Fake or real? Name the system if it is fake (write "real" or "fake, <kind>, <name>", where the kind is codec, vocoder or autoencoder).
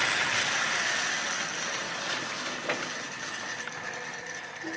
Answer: real